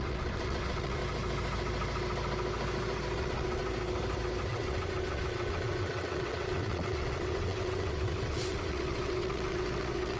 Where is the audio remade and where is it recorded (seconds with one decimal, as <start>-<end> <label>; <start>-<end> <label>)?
0.0-1.0 remade; 1.0-3.2 recorded; 3.2-3.6 remade; 3.6-4.5 recorded; 4.5-10.2 remade